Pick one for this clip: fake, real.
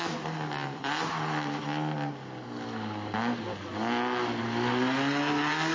real